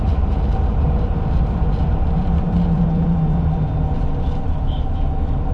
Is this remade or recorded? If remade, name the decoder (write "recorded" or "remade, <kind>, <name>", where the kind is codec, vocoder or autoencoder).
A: remade, vocoder, BigVGAN v2